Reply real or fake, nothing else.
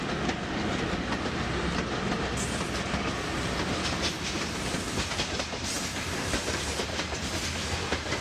real